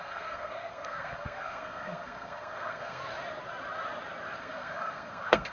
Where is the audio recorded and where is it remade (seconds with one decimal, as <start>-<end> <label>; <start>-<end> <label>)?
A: 0.0-3.0 remade; 3.0-4.4 recorded; 4.4-5.5 remade